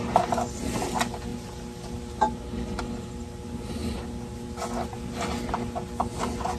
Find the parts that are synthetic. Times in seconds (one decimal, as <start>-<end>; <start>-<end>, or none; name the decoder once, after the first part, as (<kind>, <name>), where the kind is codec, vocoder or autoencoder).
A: none